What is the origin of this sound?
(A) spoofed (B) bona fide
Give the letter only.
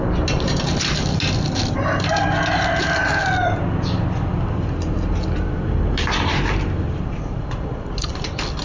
B